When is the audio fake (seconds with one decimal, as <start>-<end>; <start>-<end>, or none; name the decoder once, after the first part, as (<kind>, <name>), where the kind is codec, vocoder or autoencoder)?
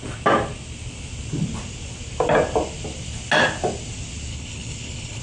4.3-5.2 (codec, HILCodec)